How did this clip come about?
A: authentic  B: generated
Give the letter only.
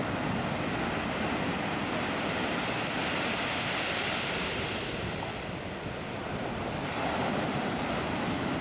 A